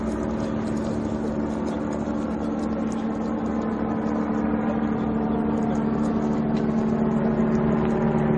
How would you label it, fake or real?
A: real